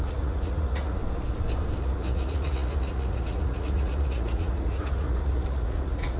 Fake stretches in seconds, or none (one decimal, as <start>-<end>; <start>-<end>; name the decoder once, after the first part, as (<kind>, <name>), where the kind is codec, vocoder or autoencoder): 0.0-1.0 (vocoder, Vocos); 1.8-6.2